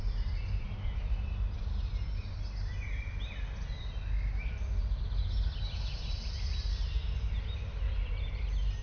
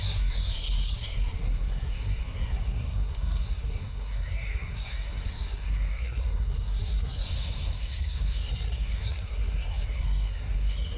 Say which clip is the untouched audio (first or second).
first